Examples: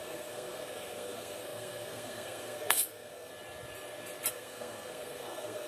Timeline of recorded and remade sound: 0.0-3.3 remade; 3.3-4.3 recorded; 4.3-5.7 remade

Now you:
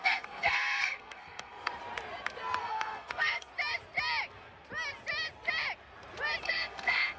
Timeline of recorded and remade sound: 0.0-1.8 remade; 1.8-2.6 recorded; 2.6-3.5 remade; 3.5-6.4 recorded; 6.4-7.2 remade

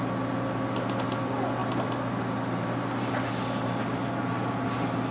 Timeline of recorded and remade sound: 0.0-5.1 recorded

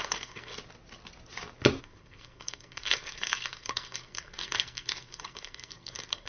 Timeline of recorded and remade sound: 0.0-0.5 remade; 0.5-1.8 recorded; 1.8-6.3 remade

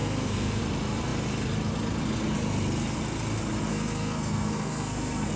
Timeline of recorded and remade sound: 0.0-0.6 remade; 0.6-3.7 recorded; 3.7-5.4 remade

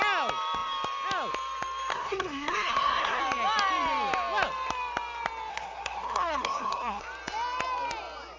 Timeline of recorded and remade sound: 0.0-1.9 recorded; 1.9-3.2 remade; 3.2-5.5 recorded; 5.5-7.0 remade; 7.0-8.4 recorded

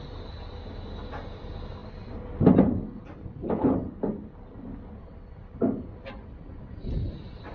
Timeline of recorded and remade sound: 0.0-7.5 recorded

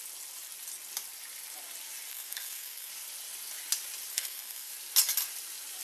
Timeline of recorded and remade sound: 0.0-2.1 recorded; 2.1-2.9 remade; 2.9-4.1 recorded; 4.1-4.7 remade; 4.7-5.8 recorded